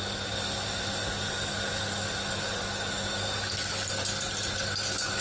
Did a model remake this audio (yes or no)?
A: no